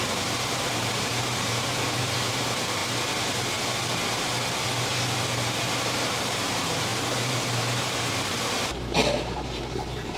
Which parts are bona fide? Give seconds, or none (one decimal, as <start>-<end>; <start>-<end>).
2.8-5.2